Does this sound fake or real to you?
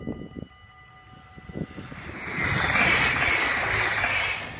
real